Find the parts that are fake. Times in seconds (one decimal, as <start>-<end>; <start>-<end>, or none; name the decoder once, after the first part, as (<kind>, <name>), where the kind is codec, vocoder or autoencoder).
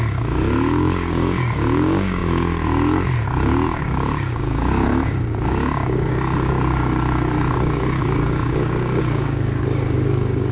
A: 0.0-10.5 (codec, DAC)